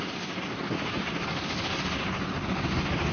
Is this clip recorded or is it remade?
recorded